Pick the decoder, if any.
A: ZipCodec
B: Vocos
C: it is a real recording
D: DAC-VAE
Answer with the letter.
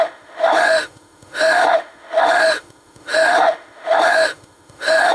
D